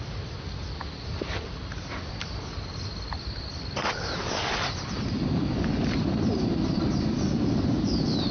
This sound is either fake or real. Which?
real